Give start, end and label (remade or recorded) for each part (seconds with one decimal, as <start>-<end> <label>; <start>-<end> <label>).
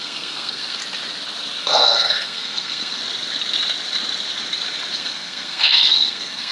0.0-0.8 remade; 0.8-1.6 recorded; 1.6-3.0 remade; 3.0-5.0 recorded; 5.0-6.5 remade